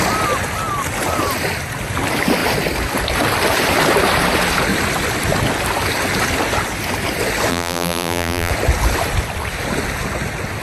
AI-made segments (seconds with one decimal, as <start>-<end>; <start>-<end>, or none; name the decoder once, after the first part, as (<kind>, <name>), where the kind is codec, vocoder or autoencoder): 7.5-8.5 (vocoder, BigVGAN v2)